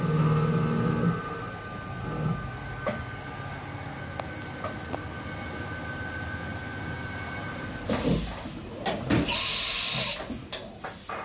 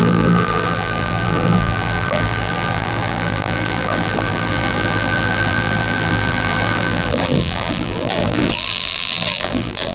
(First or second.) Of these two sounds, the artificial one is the second